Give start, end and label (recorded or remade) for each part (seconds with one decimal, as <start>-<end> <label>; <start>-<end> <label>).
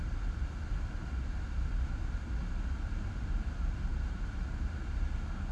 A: 0.0-5.5 recorded